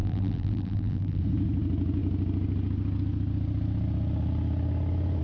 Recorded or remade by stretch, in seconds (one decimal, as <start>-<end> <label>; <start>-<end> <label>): 0.0-1.2 remade; 1.2-5.2 recorded